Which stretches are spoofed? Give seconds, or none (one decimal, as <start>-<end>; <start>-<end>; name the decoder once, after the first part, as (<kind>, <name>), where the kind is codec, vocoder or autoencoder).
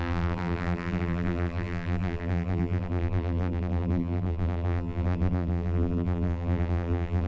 0.0-7.3 (vocoder, BigVGAN v2)